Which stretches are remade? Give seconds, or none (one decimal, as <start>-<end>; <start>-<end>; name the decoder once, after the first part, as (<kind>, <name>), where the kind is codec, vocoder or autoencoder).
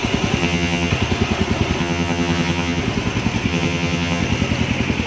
0.4-0.9 (vocoder, HiFi-GAN); 1.8-2.8; 3.5-4.2